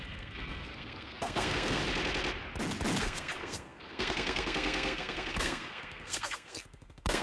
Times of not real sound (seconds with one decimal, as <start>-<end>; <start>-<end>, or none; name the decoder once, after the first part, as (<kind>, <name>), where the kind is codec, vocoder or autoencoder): 0.0-1.8 (codec, SNAC); 3.0-7.2